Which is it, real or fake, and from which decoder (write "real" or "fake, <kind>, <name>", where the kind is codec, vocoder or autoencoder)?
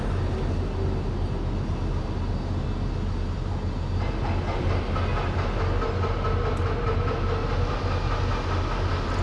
real